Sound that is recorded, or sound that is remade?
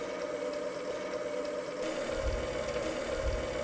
recorded